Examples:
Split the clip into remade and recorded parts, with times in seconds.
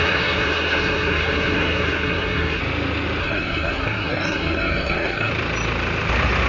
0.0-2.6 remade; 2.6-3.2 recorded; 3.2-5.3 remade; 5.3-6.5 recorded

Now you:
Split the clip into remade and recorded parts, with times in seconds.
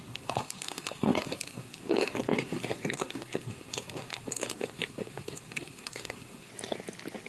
0.0-6.5 remade; 6.5-7.3 recorded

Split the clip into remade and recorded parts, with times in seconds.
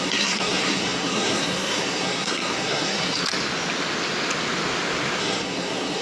0.0-3.2 remade; 3.2-5.2 recorded; 5.2-6.0 remade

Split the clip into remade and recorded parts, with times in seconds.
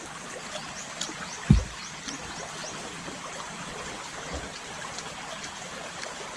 0.0-6.4 recorded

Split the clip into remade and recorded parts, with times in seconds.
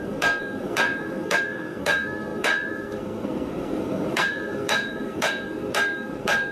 0.0-6.5 remade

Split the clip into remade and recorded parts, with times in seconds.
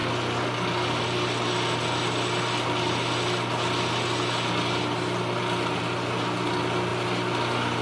0.0-7.8 recorded